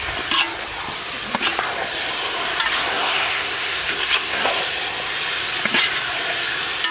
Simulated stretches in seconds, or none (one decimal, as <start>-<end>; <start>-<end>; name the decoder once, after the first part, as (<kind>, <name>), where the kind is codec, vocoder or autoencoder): 2.9-4.5 (codec, SNAC)

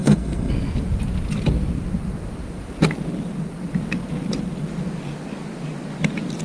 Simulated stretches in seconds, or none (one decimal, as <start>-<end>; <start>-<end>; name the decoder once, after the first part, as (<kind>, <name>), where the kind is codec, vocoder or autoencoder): 0.0-0.5 (codec, SNAC)

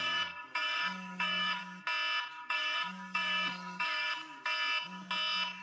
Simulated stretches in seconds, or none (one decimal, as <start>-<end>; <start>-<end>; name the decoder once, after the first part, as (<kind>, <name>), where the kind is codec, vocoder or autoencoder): 0.0-1.6 (codec, DAC); 2.5-4.1

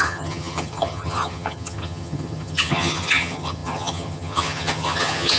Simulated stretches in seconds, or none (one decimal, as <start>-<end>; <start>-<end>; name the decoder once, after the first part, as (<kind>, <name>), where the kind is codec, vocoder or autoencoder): 0.0-5.4 (vocoder, HiFi-GAN)

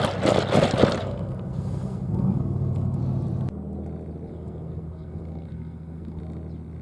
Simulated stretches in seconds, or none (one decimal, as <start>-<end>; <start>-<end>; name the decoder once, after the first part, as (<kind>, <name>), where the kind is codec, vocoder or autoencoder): 1.0-3.0 (codec, SNAC); 4.3-6.2